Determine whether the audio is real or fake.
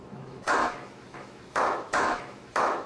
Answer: fake